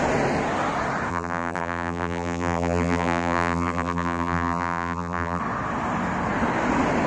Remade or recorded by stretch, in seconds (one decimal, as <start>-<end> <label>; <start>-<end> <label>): 0.0-1.1 recorded; 1.1-5.4 remade; 5.4-7.1 recorded